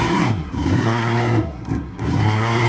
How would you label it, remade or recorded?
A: remade